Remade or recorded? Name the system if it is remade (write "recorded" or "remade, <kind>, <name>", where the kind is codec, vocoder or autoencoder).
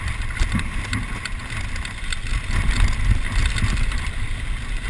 recorded